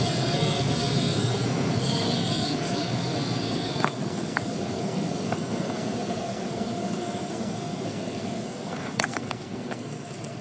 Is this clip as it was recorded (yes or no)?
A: no